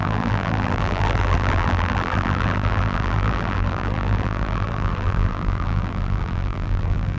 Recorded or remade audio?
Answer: remade